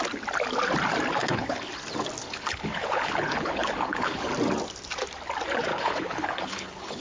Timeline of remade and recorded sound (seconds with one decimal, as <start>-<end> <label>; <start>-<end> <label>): 0.0-1.2 recorded; 1.2-1.7 remade; 1.7-2.2 recorded; 2.2-4.3 remade; 4.3-5.7 recorded; 5.7-7.0 remade